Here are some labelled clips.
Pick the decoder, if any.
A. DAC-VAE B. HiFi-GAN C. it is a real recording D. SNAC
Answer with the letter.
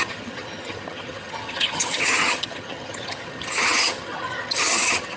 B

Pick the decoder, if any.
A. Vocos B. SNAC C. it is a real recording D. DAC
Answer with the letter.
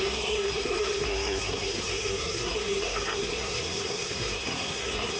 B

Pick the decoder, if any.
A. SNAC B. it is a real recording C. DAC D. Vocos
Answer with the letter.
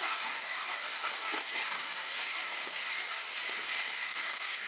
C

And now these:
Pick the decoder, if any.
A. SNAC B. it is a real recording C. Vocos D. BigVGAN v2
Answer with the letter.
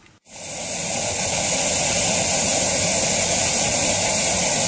B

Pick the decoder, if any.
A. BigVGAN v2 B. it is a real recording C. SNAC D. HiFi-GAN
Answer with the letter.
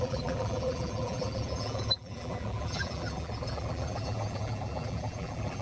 A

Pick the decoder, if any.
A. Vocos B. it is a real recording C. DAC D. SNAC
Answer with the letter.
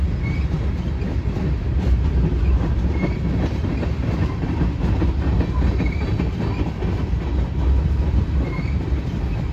B